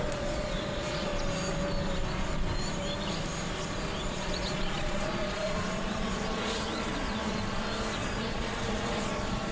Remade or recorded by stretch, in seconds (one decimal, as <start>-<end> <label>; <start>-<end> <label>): 0.0-1.1 remade; 1.1-4.0 recorded; 4.0-7.4 remade; 7.4-8.0 recorded; 8.0-9.5 remade